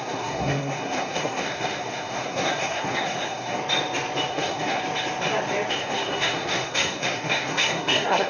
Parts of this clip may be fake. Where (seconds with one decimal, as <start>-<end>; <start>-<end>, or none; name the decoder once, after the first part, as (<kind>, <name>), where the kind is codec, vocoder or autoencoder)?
0.0-3.6 (codec, SNAC); 4.3-4.8; 5.7-8.3